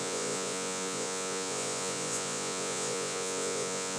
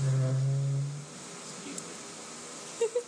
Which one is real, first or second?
second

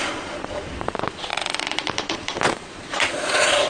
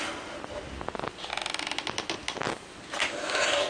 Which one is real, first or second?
second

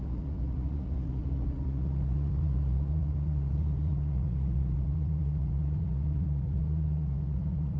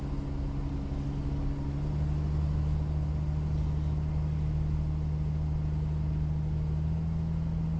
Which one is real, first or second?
second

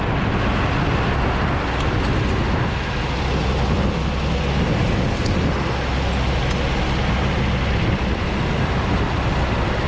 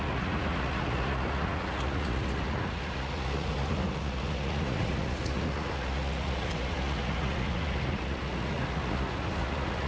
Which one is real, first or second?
first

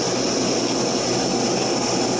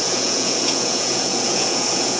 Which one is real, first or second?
first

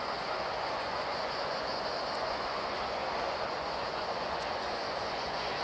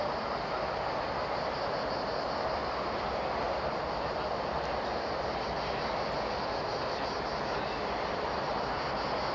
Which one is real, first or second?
second